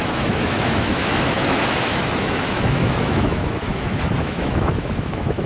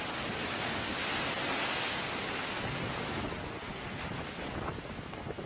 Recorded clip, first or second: second